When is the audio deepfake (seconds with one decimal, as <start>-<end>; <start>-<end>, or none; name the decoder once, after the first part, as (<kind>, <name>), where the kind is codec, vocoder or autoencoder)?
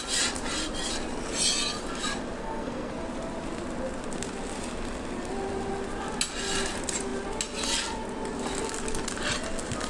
2.4-2.9 (codec, SNAC)